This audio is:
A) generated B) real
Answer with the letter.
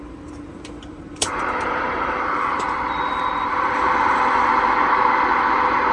A